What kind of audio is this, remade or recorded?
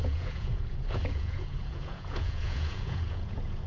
remade